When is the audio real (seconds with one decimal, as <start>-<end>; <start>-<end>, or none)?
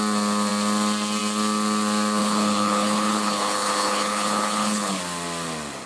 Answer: 0.0-2.2; 5.0-5.9